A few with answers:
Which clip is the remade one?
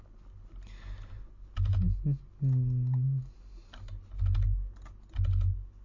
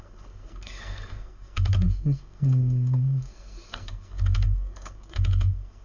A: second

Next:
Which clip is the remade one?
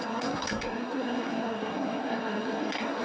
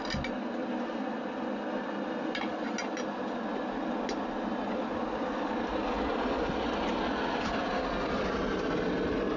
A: first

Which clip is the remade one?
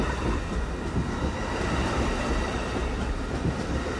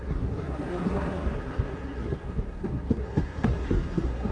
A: second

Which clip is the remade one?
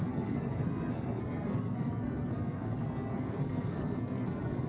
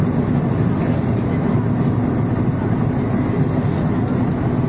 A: first